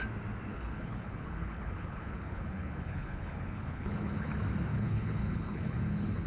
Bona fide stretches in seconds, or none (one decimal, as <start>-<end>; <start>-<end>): 0.0-0.5; 4.3-4.7